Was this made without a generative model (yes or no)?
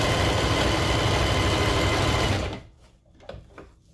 yes